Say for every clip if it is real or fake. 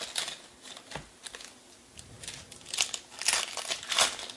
real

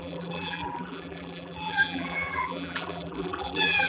fake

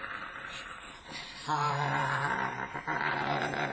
fake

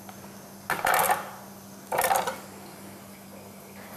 real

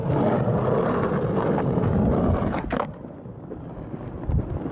real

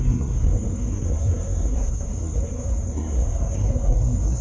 fake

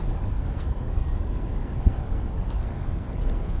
fake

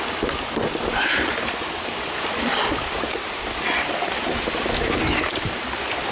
real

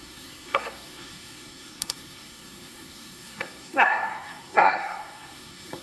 fake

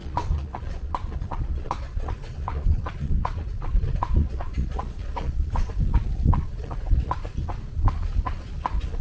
fake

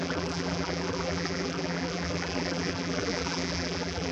fake